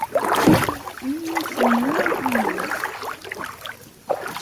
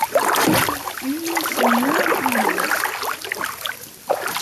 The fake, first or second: second